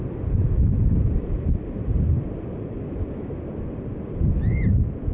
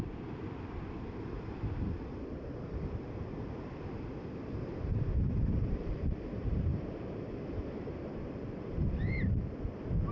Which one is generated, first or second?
second